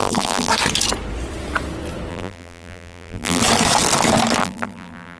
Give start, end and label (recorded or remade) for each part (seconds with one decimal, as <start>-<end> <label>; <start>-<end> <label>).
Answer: 0.0-0.5 remade; 0.5-2.1 recorded; 2.1-3.4 remade; 3.4-4.4 recorded; 4.4-5.2 remade